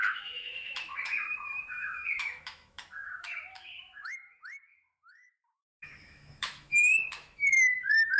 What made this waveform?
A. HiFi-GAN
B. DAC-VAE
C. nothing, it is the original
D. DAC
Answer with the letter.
B